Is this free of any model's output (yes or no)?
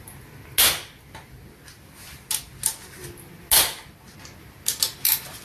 yes